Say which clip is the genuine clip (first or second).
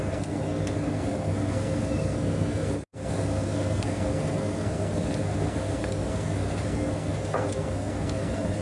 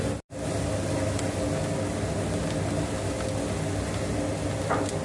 second